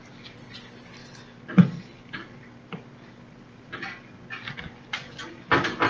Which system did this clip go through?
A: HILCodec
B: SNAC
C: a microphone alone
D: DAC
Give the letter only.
C